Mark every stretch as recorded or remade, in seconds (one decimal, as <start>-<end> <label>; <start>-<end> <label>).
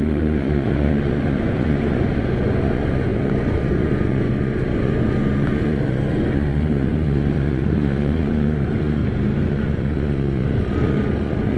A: 0.0-9.0 remade; 9.0-9.5 recorded; 9.5-11.6 remade